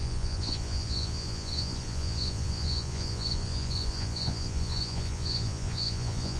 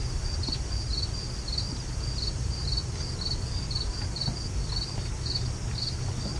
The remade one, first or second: first